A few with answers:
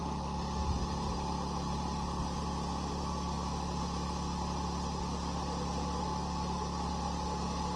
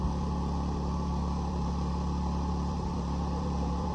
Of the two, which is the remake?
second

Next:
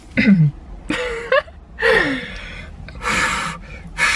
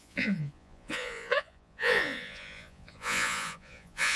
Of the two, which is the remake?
second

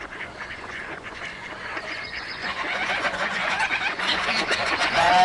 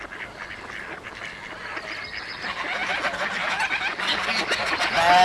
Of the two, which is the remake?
first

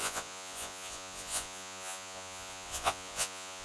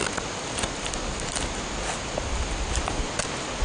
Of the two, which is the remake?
first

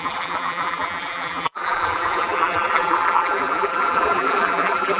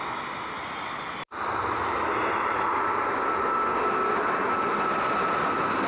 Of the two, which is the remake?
first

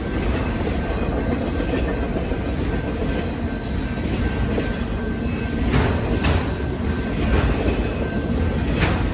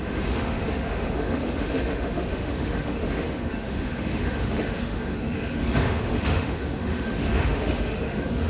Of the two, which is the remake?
second